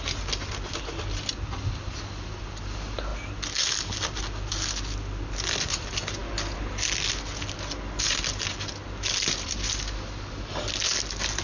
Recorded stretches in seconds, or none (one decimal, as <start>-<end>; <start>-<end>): 0.0-11.4